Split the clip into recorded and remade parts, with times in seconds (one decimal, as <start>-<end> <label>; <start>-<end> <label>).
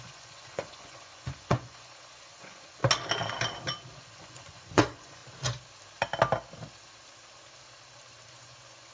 0.0-2.8 remade; 2.8-3.9 recorded; 3.9-5.2 remade; 5.2-8.3 recorded; 8.3-8.9 remade